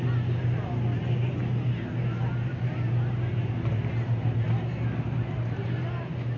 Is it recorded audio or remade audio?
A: recorded